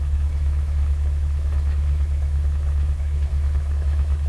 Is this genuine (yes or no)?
no